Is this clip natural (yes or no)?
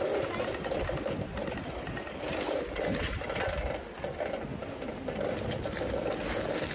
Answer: yes